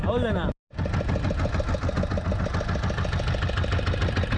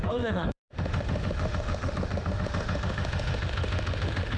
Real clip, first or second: first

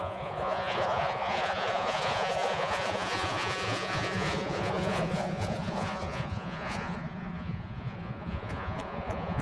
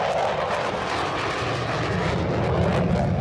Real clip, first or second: second